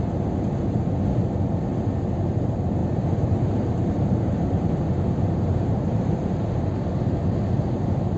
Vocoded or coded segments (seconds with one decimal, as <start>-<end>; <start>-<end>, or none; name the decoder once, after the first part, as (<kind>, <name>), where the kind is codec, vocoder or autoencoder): 2.8-4.7 (vocoder, BigVGAN v2); 5.5-6.9